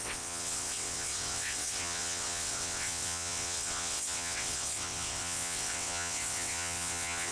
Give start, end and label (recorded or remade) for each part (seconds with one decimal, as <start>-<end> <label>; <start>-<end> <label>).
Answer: 0.0-7.3 remade